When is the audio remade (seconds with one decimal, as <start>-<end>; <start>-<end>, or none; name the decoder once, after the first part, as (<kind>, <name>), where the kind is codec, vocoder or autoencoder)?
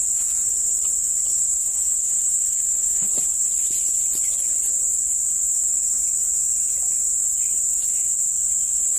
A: 1.3-3.1 (codec, SNAC)